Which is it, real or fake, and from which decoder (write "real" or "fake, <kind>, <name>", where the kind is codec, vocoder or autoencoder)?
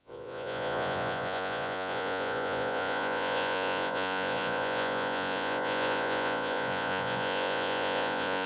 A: fake, vocoder, Vocos